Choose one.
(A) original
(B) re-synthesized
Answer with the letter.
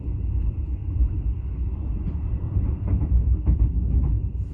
B